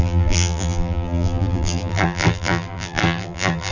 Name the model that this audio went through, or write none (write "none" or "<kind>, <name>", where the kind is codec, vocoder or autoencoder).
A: vocoder, BigVGAN v2